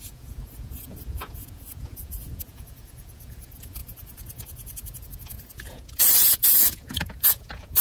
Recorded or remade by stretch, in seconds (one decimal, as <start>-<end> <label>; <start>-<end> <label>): 0.0-7.8 remade